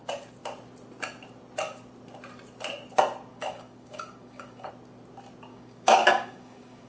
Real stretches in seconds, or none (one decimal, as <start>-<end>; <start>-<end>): 0.0-3.3; 4.7-5.5